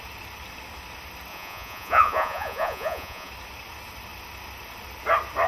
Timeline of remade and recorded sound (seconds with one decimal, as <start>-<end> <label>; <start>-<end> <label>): 0.0-1.3 recorded; 1.3-3.3 remade; 3.3-5.5 recorded